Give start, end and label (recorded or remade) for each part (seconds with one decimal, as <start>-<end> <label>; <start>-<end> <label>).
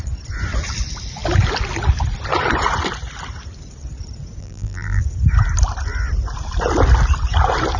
0.0-4.4 recorded; 4.4-5.0 remade; 5.0-7.8 recorded